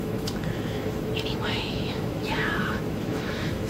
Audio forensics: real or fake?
fake